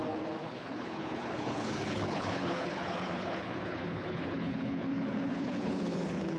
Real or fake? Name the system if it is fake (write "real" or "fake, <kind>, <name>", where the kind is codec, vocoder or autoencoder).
fake, codec, HILCodec